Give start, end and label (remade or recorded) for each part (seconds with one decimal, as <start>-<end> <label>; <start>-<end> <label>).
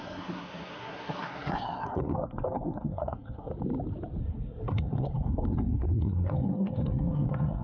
0.0-3.5 remade; 3.5-4.2 recorded; 4.2-7.6 remade